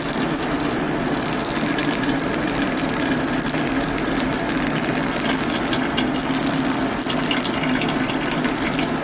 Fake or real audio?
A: real